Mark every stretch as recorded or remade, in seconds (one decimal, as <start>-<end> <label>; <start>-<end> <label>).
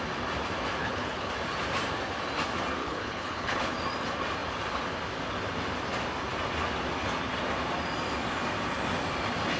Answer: 0.0-0.8 recorded; 0.8-1.3 remade; 1.3-2.8 recorded; 2.8-3.7 remade; 3.7-9.6 recorded